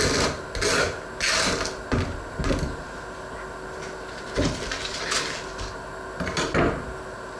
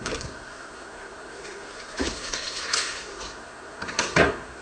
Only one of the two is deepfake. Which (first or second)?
second